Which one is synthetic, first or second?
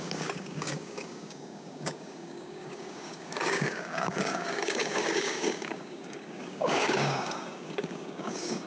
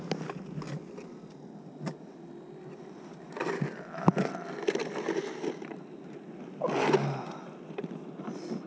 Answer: first